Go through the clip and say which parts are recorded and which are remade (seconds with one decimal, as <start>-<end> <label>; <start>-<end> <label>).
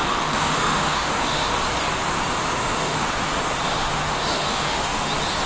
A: 0.0-1.5 remade; 1.5-2.6 recorded; 2.6-3.2 remade; 3.2-3.7 recorded; 3.7-5.0 remade; 5.0-5.5 recorded